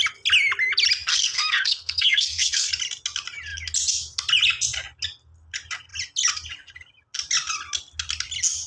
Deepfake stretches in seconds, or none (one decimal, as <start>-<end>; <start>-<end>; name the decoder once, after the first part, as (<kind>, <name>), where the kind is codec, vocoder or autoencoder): 1.1-2.7 (codec, SNAC)